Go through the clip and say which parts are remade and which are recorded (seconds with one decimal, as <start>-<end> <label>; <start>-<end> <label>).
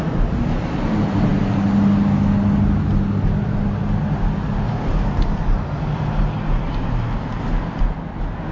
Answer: 0.0-8.5 recorded